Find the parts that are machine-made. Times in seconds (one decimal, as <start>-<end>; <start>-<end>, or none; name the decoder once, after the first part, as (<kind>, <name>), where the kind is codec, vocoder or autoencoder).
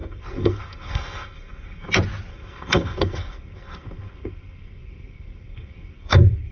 0.0-1.9 (codec, SNAC); 2.3-6.5